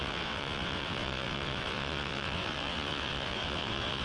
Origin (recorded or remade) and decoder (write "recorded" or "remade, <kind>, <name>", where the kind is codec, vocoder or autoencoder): remade, vocoder, WaveNeXt